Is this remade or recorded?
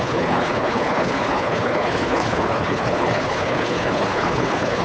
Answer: remade